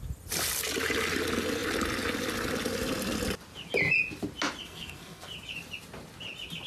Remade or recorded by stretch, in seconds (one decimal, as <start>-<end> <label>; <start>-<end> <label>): 0.0-4.6 recorded; 4.6-5.3 remade; 5.3-6.7 recorded